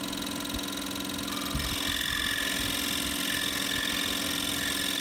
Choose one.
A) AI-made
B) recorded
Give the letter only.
B